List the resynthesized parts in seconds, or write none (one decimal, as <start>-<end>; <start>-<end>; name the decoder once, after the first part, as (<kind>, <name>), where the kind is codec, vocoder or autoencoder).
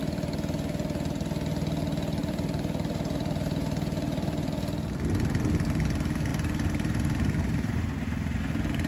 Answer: 2.2-4.5 (vocoder, BigVGAN v2); 6.3-7.8